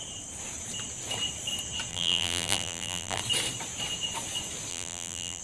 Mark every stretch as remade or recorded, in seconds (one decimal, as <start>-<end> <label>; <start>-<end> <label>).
0.0-1.9 recorded; 1.9-3.2 remade; 3.2-4.7 recorded; 4.7-5.4 remade